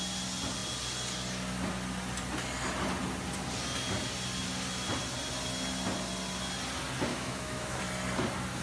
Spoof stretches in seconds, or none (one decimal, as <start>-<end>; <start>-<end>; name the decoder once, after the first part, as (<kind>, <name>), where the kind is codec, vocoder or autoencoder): 7.1-7.8 (autoencoder, DAC-VAE)